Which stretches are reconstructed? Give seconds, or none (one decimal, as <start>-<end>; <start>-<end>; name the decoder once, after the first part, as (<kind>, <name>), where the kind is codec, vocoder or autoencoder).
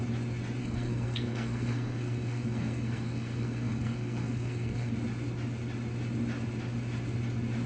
0.6-4.9 (codec, SNAC)